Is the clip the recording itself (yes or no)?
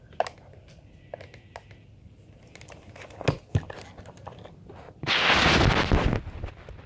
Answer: yes